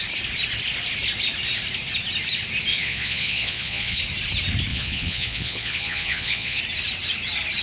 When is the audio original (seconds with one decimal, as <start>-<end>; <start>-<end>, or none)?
0.0-2.7; 4.0-4.7; 6.6-7.6